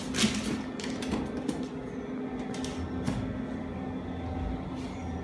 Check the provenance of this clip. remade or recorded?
recorded